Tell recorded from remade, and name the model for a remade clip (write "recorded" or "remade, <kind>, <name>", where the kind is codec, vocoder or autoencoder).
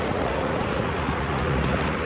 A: remade, vocoder, Vocos